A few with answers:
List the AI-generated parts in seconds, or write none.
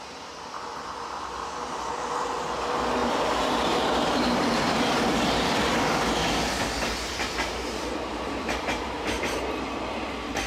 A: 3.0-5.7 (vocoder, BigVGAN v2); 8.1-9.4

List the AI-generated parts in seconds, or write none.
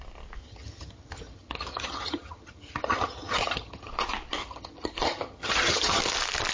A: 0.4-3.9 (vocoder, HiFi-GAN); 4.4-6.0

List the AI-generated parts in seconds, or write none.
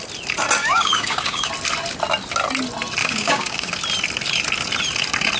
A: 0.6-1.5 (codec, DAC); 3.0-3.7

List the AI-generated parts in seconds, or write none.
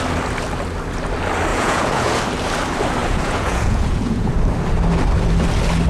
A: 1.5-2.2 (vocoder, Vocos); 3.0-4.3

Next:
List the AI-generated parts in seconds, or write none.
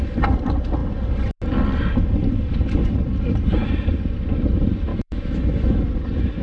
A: 4.9-5.8 (autoencoder, DAC-VAE)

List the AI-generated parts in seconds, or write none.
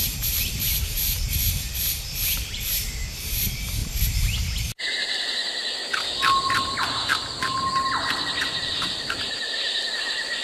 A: 0.0-3.8 (vocoder, BigVGAN v2); 4.8-5.4; 8.4-10.4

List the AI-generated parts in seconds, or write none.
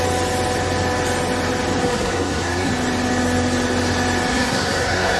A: 1.8-2.7 (codec, SNAC); 4.3-5.2